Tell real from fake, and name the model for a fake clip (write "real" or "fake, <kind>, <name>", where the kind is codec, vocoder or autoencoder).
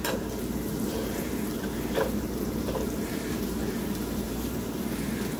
fake, vocoder, BigVGAN v2